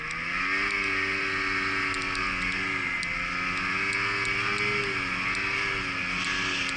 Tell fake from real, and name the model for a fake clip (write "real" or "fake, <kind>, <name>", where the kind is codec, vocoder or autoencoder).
real